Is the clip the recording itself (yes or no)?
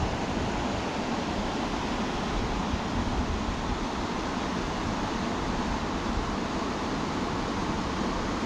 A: yes